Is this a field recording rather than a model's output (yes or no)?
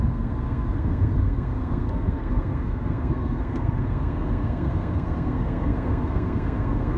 no